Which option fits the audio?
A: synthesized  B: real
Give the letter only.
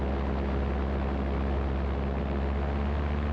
B